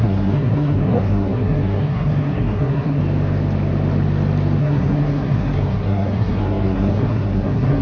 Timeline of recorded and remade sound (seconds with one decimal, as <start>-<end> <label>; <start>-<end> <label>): 0.0-3.0 remade; 3.0-4.6 recorded; 4.6-7.8 remade